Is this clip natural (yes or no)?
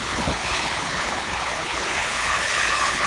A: no